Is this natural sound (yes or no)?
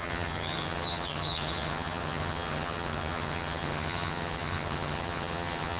no